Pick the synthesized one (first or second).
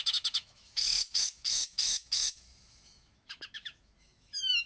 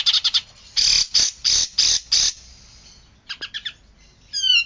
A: first